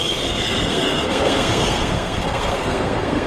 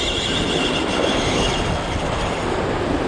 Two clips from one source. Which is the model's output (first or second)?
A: first